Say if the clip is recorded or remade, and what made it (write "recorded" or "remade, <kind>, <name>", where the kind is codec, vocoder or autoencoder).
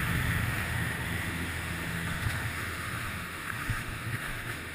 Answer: remade, autoencoder, DAC-VAE